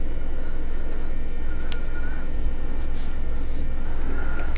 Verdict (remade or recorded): recorded